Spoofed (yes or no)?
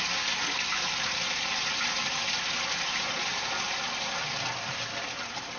no